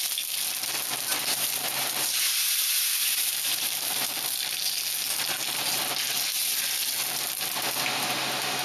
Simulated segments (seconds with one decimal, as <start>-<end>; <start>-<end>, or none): 1.1-4.0